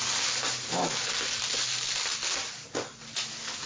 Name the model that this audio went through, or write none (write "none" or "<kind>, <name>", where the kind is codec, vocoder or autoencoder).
none